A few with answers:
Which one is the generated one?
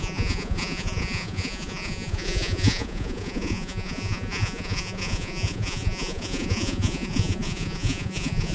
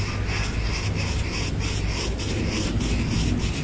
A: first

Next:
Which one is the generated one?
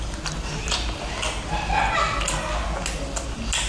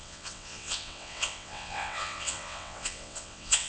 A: second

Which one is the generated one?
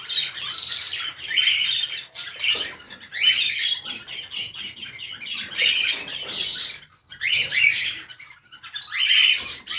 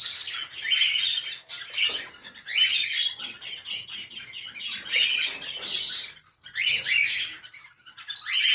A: first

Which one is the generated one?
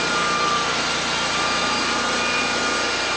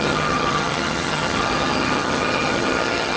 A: second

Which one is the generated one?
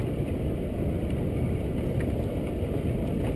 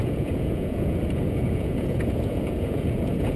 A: second